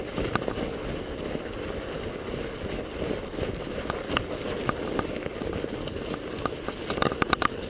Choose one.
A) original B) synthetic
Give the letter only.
A